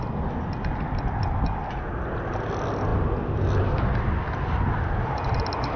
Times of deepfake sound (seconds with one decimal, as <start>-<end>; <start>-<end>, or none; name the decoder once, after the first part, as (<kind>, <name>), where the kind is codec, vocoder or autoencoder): none